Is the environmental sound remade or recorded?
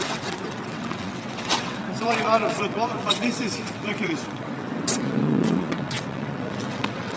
remade